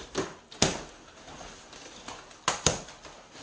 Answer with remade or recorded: recorded